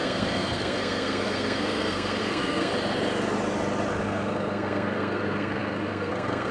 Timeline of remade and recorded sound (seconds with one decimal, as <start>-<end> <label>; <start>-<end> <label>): 0.0-2.7 remade; 2.7-4.0 recorded; 4.0-6.5 remade